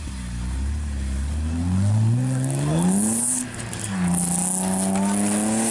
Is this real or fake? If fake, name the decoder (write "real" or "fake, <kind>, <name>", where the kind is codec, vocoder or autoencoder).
real